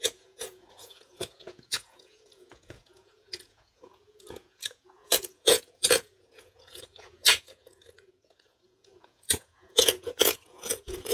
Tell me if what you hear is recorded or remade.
remade